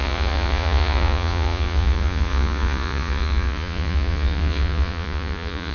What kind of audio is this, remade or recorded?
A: remade